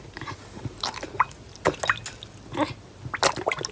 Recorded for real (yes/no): yes